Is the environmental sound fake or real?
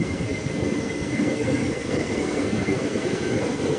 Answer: fake